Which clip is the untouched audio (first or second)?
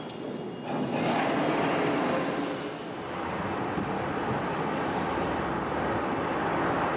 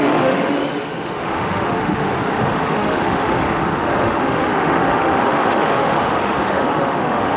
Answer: first